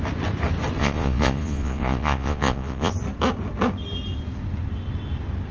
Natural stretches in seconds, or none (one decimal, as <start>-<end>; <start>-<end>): 0.0-0.8; 2.9-5.5